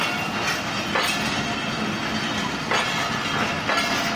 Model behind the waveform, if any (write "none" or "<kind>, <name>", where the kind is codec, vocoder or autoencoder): none